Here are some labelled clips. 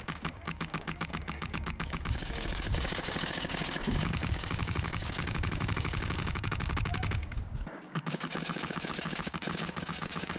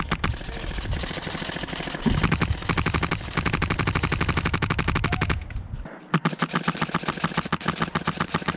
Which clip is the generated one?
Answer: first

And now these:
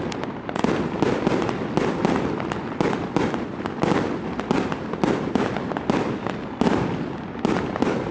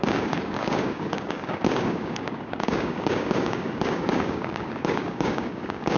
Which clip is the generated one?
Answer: second